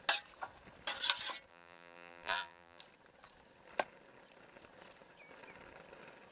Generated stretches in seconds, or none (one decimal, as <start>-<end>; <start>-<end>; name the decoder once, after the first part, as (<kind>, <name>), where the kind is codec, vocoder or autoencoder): 1.5-2.8 (vocoder, BigVGAN v2)